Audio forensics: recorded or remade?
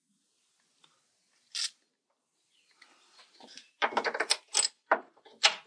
recorded